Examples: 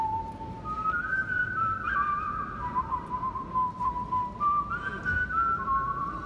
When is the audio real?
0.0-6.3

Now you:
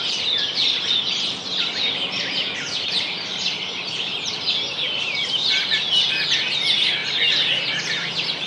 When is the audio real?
0.0-8.5